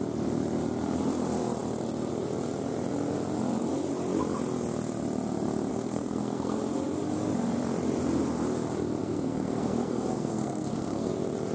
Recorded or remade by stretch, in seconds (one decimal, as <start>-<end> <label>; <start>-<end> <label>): 0.0-5.7 recorded; 5.7-6.6 remade; 6.6-9.0 recorded; 9.0-11.1 remade; 11.1-11.5 recorded